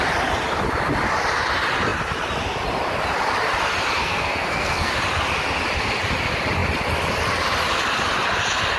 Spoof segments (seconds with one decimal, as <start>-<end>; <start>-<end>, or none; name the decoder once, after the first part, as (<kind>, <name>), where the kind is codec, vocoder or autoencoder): 4.0-4.9 (codec, SNAC)